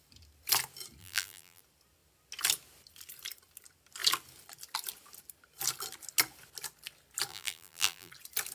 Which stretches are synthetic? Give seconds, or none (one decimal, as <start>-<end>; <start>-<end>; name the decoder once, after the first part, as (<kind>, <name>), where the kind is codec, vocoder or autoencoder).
1.0-1.6 (vocoder, BigVGAN v2); 7.3-8.1

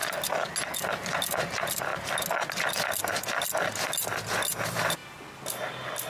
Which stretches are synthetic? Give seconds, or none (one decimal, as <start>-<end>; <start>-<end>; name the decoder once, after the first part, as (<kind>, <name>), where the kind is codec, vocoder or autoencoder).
1.4-1.9 (vocoder, BigVGAN v2); 4.6-5.0

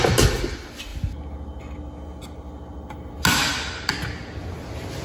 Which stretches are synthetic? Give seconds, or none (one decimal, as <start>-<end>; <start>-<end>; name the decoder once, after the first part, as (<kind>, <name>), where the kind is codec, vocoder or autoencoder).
none

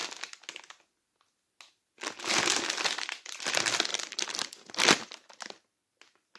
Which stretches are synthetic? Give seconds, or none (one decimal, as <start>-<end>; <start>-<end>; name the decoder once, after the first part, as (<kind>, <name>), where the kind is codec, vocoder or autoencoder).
3.9-4.5 (vocoder, BigVGAN v2)

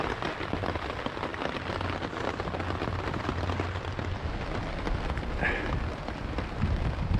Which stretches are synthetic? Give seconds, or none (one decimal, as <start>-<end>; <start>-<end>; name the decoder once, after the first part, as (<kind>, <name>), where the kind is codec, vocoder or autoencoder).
0.0-1.3 (vocoder, BigVGAN v2); 5.6-7.2